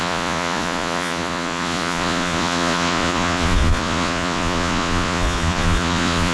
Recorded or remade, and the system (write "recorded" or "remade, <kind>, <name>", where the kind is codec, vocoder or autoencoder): remade, vocoder, Vocos